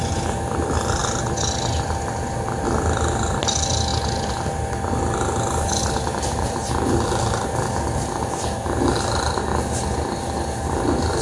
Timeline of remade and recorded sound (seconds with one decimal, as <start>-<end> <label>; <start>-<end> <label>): 0.0-11.2 recorded